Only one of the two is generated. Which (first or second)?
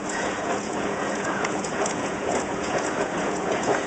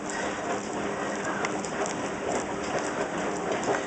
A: first